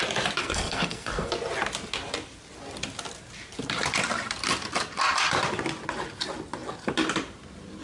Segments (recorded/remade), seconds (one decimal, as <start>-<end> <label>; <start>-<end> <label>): 0.0-0.4 recorded; 0.4-1.3 remade; 1.3-7.8 recorded